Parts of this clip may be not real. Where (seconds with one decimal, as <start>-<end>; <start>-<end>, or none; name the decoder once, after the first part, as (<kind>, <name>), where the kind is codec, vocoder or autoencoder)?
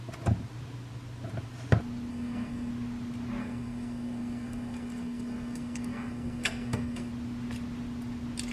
2.1-2.7 (codec, SNAC); 3.4-7.1